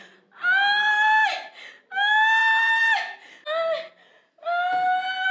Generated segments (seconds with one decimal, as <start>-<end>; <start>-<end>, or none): none